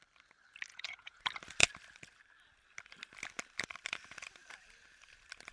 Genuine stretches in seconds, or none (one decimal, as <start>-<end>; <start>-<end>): 0.0-0.7; 1.2-5.5